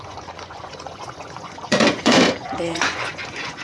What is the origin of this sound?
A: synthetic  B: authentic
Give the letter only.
A